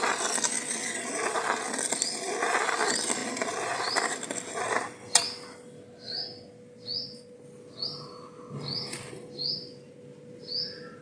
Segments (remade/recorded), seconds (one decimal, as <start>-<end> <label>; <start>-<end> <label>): 0.0-11.0 recorded